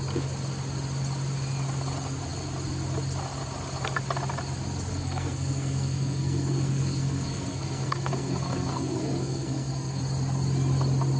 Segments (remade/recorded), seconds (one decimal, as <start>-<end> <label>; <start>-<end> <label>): 0.0-4.9 recorded; 4.9-10.0 remade; 10.0-11.2 recorded